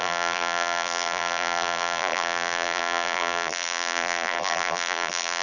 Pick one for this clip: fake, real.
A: fake